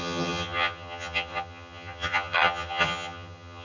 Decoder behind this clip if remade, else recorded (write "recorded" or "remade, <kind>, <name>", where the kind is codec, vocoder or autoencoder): remade, vocoder, HiFi-GAN